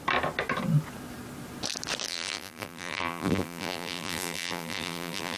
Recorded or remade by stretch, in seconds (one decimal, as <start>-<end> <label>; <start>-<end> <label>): 0.0-2.1 recorded; 2.1-5.4 remade